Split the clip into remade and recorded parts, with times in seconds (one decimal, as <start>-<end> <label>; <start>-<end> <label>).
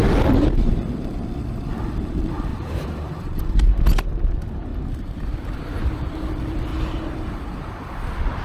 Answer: 0.0-2.5 recorded; 2.5-3.7 remade; 3.7-4.7 recorded; 4.7-6.3 remade; 6.3-6.7 recorded; 6.7-8.0 remade; 8.0-8.4 recorded